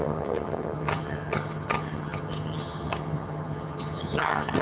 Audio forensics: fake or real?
fake